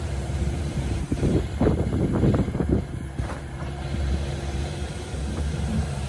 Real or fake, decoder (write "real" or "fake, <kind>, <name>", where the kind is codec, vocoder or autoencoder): fake, vocoder, BigVGAN v2